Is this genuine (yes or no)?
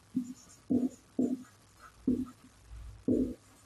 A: yes